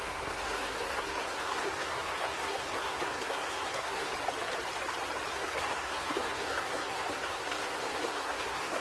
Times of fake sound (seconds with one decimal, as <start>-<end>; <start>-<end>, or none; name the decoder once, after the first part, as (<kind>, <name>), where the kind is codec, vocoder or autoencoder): 0.0-4.1 (codec, SNAC); 5.3-8.8